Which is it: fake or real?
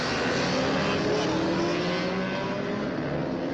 real